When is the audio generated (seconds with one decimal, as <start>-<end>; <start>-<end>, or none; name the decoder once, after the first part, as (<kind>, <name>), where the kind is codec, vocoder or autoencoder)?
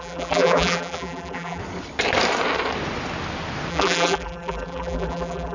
0.0-1.6 (vocoder, BigVGAN v2); 3.7-5.5